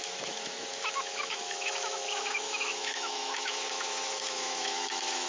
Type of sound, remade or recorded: remade